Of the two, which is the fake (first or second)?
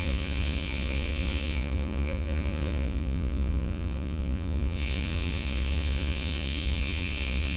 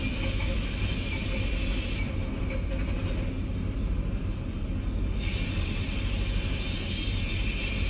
first